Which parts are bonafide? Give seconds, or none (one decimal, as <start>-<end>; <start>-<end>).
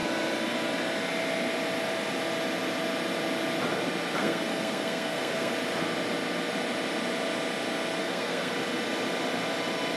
0.0-4.2; 5.5-8.0; 8.5-10.0